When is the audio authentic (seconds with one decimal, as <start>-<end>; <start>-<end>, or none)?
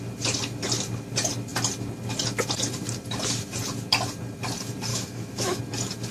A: 0.0-4.9; 5.6-6.1